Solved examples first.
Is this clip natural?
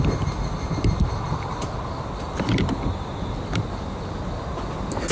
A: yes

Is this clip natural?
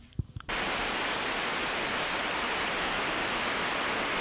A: yes